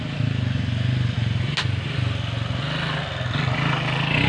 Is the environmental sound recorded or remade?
recorded